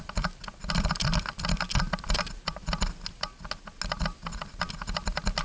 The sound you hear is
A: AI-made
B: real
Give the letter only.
B